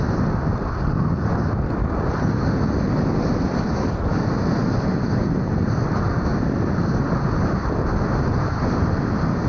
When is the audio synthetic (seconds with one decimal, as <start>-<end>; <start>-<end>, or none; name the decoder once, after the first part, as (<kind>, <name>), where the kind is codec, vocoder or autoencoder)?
none